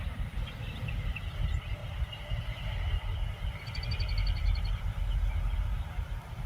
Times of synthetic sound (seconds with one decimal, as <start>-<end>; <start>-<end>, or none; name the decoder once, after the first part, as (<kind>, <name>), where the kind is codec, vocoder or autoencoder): none